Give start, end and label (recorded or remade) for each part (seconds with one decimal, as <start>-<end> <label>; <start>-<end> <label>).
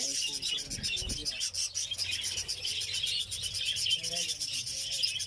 0.0-5.3 recorded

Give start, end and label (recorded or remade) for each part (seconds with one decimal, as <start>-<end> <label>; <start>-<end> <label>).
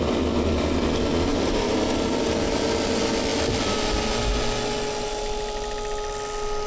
0.0-6.7 recorded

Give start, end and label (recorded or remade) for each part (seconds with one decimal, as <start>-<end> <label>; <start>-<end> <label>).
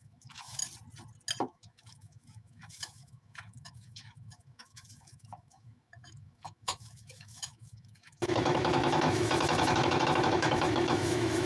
0.0-0.6 remade; 0.6-1.4 recorded; 1.4-11.5 remade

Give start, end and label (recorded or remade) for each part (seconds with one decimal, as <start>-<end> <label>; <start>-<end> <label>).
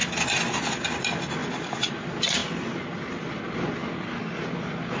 0.0-5.0 recorded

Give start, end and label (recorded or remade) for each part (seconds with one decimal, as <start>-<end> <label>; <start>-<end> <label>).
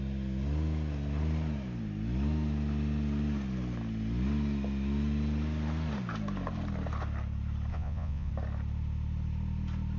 0.0-7.7 recorded; 7.7-8.3 remade; 8.3-10.0 recorded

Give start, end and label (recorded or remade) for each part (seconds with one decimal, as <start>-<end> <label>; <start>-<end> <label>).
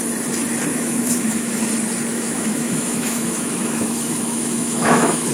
0.0-0.7 recorded; 0.7-1.6 remade; 1.6-2.1 recorded; 2.1-5.3 remade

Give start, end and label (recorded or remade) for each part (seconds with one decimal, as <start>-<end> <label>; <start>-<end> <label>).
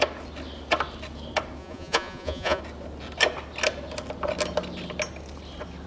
0.0-1.6 recorded; 1.6-2.6 remade; 2.6-5.9 recorded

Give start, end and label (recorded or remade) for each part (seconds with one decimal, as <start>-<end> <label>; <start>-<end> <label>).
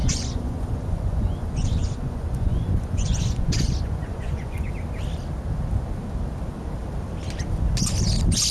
0.0-4.7 remade; 4.7-8.5 recorded